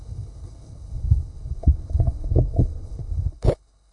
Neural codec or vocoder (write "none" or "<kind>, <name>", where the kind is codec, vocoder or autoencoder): codec, HILCodec